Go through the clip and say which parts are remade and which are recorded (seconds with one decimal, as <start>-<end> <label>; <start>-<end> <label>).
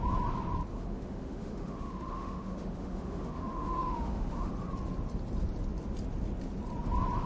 0.0-0.7 recorded; 0.7-4.5 remade; 4.5-7.3 recorded